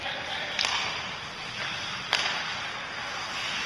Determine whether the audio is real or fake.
fake